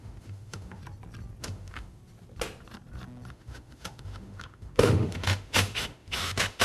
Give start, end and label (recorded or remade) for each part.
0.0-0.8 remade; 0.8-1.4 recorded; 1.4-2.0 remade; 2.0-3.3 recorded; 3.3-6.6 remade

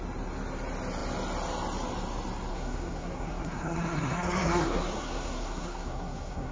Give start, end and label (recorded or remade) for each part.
0.0-2.5 recorded; 2.5-6.5 remade

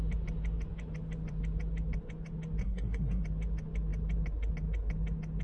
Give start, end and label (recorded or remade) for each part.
0.0-2.6 recorded; 2.6-3.2 remade; 3.2-5.4 recorded

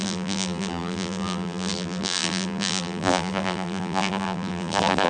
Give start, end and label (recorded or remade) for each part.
0.0-5.1 remade